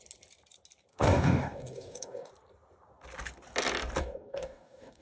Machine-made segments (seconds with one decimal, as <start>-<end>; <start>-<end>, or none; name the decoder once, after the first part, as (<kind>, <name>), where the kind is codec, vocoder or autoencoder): 0.9-2.3 (codec, DAC); 4.0-5.0